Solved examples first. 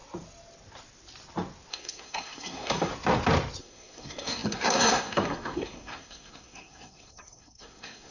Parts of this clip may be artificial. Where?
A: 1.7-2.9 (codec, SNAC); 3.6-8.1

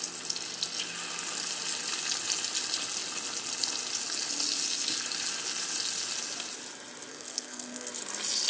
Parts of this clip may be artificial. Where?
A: 7.1-7.9 (codec, SNAC)

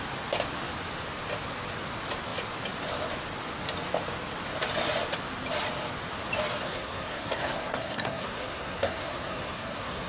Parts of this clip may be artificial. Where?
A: 6.6-10.1 (codec, SNAC)

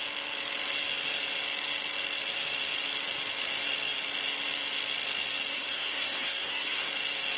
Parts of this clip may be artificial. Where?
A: 5.5-6.9 (codec, SNAC)